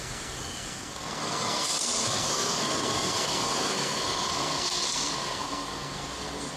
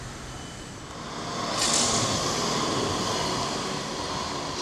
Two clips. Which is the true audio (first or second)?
second